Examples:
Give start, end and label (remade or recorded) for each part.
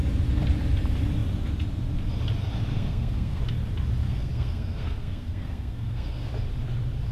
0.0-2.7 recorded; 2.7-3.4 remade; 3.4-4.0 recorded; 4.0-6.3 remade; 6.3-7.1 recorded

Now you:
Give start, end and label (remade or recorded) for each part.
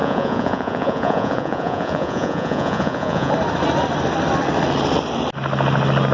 0.0-3.3 remade; 3.3-6.1 recorded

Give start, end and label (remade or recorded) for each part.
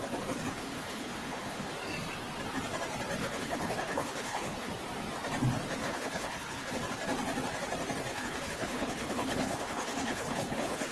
0.0-0.5 recorded; 0.5-1.7 remade; 1.7-3.2 recorded; 3.2-4.7 remade; 4.7-5.8 recorded; 5.8-6.7 remade; 6.7-8.1 recorded; 8.1-10.9 remade